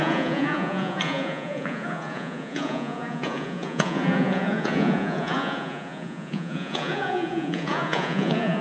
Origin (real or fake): fake